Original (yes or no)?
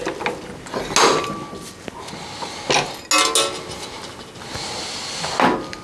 yes